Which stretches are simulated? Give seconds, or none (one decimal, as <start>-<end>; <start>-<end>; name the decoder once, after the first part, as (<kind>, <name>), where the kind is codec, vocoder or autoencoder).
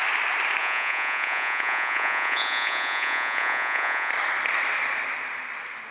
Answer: 0.6-4.1 (vocoder, Vocos)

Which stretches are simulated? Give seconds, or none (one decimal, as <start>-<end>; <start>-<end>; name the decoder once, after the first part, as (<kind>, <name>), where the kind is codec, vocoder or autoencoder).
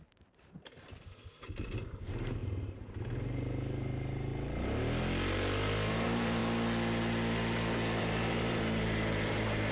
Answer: 0.0-4.3 (vocoder, BigVGAN v2); 5.9-6.4; 8.0-9.7